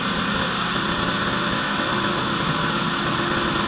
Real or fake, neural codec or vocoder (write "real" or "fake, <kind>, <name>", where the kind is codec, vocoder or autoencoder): real